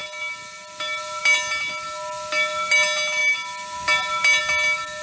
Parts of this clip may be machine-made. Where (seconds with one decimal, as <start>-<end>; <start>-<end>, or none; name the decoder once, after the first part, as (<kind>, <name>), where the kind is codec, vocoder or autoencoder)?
none